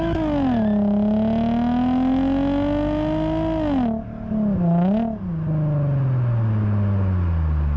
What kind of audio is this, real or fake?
real